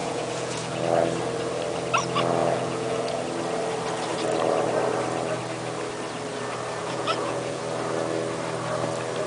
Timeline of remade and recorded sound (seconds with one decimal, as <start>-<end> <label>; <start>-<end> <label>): 0.0-0.8 remade; 0.8-2.4 recorded; 2.4-3.2 remade; 3.2-6.8 recorded; 6.8-7.6 remade; 7.6-9.3 recorded